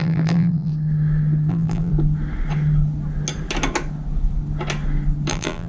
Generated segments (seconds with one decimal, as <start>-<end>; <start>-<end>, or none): 0.0-0.7; 1.5-1.9; 5.3-5.7

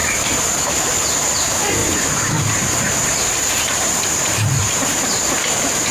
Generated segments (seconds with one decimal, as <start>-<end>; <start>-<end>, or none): 0.0-0.7; 1.8-5.2

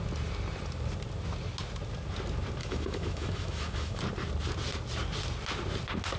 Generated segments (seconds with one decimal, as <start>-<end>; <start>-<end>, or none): 2.6-4.0